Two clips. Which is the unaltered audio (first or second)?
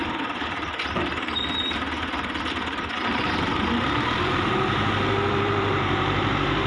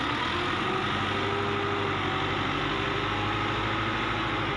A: second